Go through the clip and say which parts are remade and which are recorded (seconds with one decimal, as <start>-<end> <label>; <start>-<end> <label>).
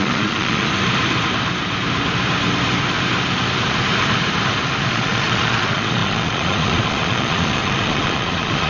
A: 0.0-0.7 remade; 0.7-4.9 recorded; 4.9-8.7 remade